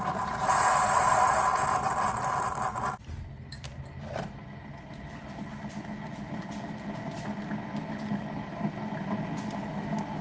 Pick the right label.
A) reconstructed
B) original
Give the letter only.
B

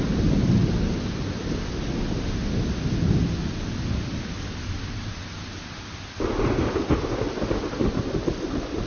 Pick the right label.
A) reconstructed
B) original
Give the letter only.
B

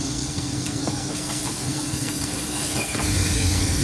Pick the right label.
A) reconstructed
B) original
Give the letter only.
A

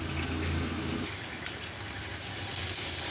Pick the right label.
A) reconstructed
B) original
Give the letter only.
B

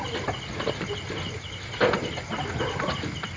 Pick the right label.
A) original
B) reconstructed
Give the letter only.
A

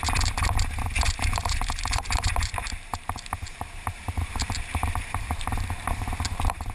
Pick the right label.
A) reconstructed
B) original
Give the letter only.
A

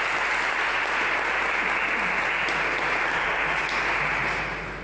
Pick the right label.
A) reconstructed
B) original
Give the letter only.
B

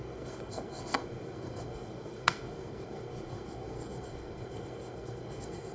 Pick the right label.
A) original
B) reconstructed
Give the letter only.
B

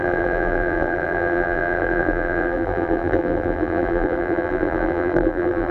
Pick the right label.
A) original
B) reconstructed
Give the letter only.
B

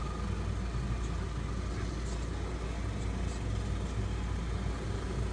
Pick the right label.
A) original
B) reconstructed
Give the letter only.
A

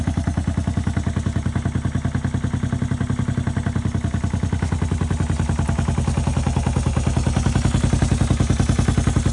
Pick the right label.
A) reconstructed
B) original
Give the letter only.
B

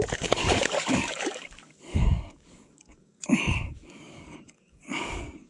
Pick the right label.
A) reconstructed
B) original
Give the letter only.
A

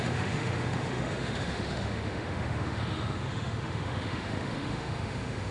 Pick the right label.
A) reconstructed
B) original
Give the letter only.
A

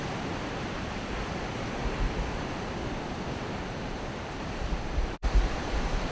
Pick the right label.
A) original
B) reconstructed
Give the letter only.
B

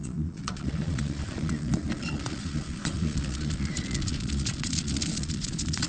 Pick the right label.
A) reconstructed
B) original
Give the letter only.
A